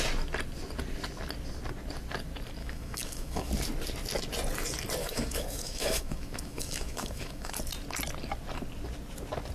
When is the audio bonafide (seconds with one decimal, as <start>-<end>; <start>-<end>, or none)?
0.0-2.6; 3.5-5.0; 7.6-9.5